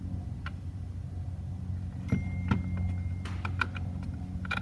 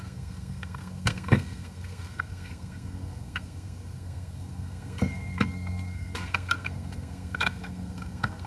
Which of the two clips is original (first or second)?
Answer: first